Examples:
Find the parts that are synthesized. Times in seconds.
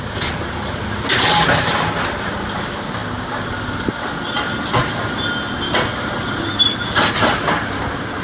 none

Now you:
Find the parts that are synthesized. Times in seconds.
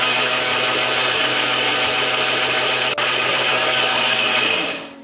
0.0-0.5; 1.1-1.7; 3.5-4.3